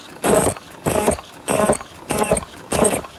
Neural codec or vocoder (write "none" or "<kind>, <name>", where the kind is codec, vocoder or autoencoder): codec, DAC